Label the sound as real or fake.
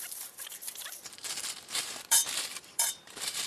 fake